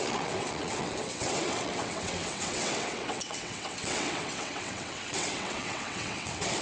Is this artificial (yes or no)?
yes